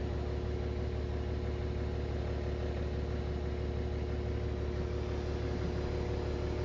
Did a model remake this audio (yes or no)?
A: no